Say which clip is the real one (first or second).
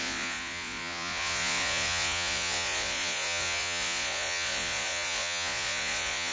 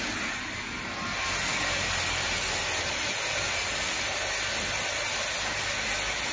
second